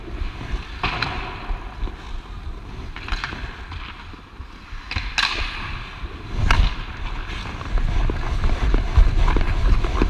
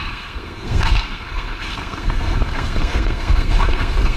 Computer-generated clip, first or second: second